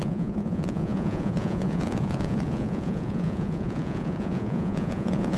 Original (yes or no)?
no